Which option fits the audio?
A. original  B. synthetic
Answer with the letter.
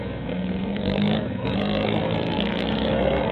B